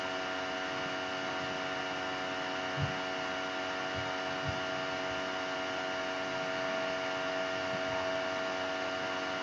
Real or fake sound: real